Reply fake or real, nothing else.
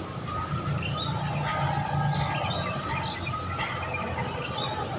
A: real